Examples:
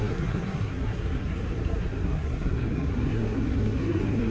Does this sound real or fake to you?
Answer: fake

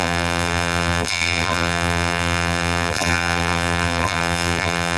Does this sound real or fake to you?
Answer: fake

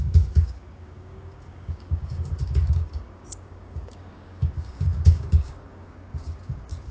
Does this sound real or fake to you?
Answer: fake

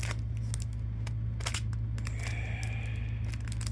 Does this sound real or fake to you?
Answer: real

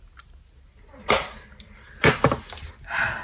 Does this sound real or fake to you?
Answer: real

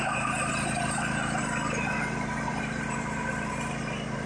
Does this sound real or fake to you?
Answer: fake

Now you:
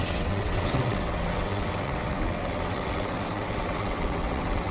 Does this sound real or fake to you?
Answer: fake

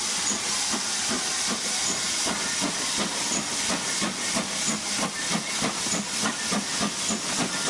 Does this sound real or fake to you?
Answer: real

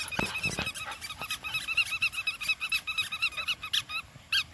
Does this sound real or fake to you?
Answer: real